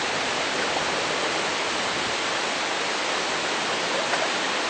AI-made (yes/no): no